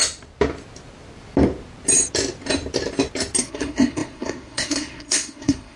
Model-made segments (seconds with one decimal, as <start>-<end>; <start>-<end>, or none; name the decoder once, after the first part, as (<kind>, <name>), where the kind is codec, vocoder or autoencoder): 3.4-5.8 (codec, SNAC)